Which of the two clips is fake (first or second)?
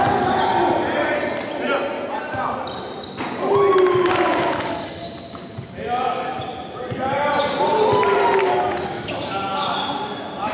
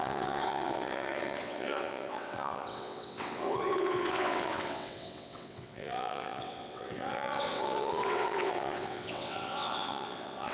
second